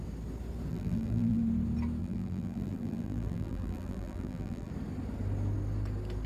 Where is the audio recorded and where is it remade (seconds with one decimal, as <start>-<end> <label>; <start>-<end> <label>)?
0.0-0.7 recorded; 0.7-1.4 remade; 1.4-2.0 recorded; 2.0-4.7 remade; 4.7-6.3 recorded